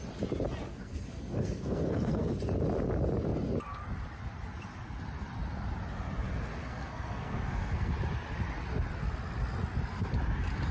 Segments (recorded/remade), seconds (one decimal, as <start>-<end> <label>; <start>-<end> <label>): 0.0-0.7 recorded; 0.7-2.3 remade; 2.3-6.6 recorded; 6.6-7.9 remade; 7.9-10.7 recorded